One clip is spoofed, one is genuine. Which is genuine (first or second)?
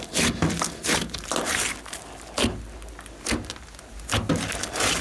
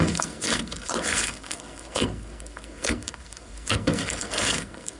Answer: first